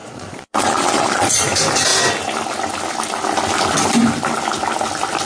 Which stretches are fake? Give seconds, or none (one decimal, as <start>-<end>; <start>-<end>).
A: 0.0-1.4